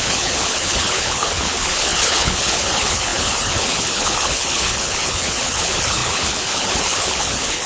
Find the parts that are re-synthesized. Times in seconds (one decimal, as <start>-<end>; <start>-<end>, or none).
0.0-7.7